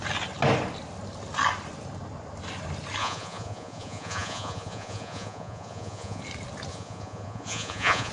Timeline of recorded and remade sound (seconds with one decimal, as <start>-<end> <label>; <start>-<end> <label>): 0.0-3.0 recorded; 3.0-6.2 remade; 6.2-6.7 recorded; 6.7-8.1 remade